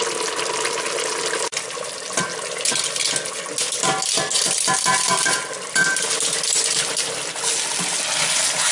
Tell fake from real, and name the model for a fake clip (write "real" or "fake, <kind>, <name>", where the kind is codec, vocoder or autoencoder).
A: real